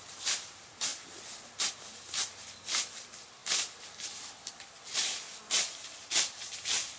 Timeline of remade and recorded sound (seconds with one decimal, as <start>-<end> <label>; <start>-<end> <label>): 0.0-7.0 recorded